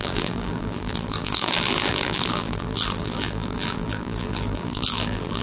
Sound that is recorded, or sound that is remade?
remade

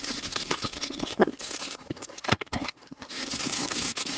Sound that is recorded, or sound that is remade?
remade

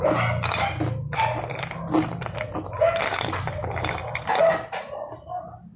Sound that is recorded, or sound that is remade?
recorded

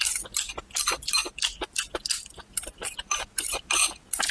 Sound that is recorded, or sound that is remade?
recorded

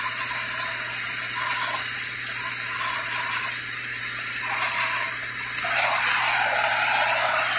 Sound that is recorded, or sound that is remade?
recorded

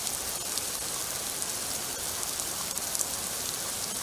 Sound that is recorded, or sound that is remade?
recorded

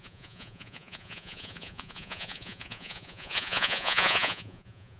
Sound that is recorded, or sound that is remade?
remade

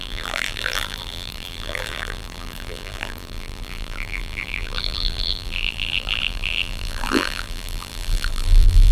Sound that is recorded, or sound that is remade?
remade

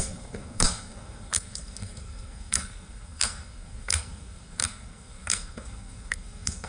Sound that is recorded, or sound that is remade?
remade